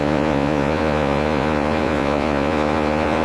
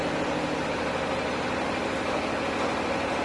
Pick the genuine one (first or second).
second